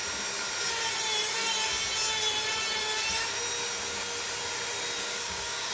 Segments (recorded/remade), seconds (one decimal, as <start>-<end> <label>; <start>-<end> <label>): 0.0-5.0 recorded; 5.0-5.7 remade